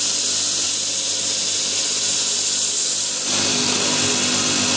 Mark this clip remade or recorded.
recorded